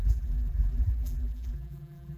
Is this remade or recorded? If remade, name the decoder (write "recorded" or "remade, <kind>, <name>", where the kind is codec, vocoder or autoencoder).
remade, vocoder, BigVGAN v2